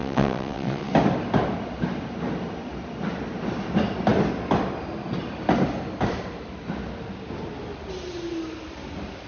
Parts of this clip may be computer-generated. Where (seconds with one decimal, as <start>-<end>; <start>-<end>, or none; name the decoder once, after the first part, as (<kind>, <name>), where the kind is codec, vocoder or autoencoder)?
0.0-0.9 (vocoder, WaveNeXt)